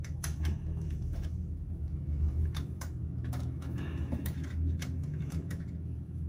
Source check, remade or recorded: remade